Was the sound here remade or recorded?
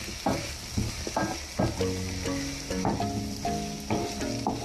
recorded